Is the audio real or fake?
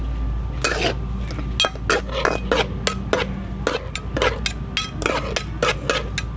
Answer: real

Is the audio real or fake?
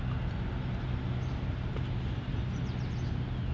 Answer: real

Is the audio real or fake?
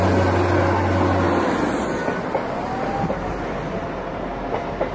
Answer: real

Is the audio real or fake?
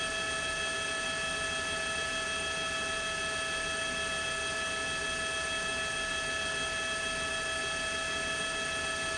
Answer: real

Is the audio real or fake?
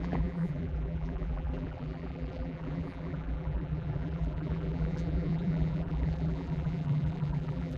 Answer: fake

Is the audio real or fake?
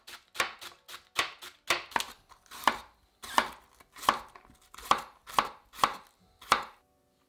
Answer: real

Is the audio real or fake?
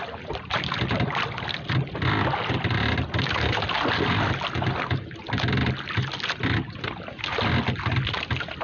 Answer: real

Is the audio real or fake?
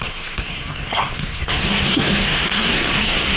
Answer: fake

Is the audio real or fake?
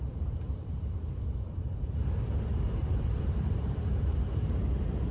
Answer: fake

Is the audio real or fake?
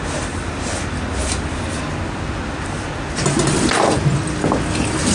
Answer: real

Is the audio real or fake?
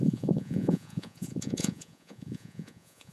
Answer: fake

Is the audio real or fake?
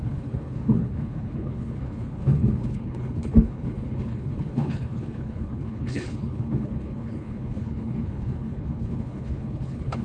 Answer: fake